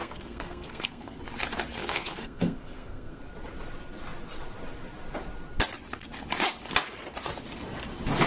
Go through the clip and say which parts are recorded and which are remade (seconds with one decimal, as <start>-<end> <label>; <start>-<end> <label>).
0.0-1.2 remade; 1.2-1.8 recorded; 1.8-3.2 remade; 3.2-8.3 recorded